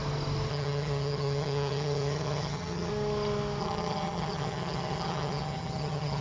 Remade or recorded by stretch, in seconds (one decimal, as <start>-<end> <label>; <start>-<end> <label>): 0.0-0.5 recorded; 0.5-2.9 remade; 2.9-3.6 recorded; 3.6-6.2 remade